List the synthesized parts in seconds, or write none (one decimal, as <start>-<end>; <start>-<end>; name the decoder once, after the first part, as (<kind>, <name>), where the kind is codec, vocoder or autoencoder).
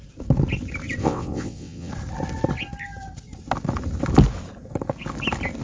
1.0-1.9 (vocoder, WaveNeXt)